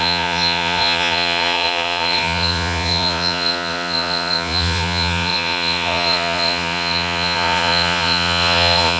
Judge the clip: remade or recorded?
remade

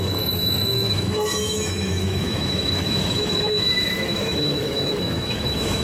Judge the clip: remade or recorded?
remade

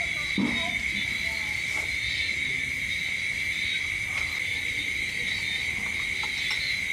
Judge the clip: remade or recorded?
recorded